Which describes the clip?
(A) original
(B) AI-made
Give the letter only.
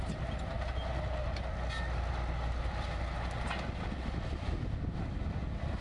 A